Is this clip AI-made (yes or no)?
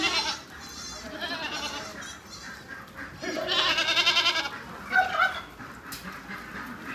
no